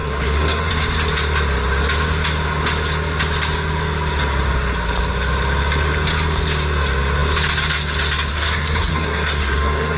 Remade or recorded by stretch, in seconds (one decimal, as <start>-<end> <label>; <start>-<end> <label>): 0.0-0.7 remade; 0.7-8.3 recorded; 8.3-10.0 remade